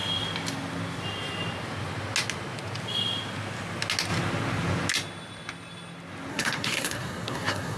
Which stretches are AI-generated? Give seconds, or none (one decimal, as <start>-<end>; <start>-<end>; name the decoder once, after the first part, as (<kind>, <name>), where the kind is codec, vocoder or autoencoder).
6.3-7.8 (codec, SNAC)